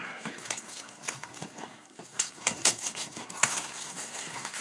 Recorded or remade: remade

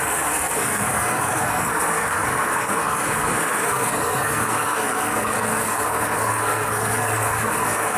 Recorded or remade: remade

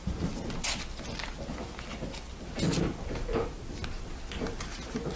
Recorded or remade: recorded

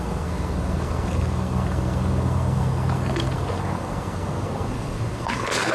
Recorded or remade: remade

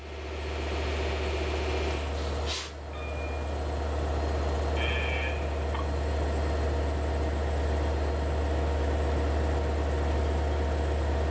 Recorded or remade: recorded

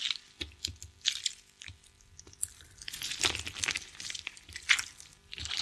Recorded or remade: recorded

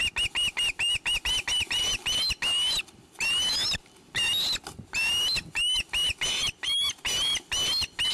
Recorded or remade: recorded